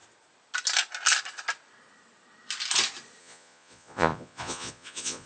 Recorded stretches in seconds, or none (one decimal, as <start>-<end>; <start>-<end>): 0.0-3.2